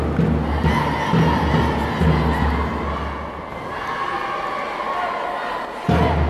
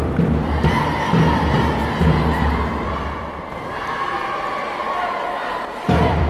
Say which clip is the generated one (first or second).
second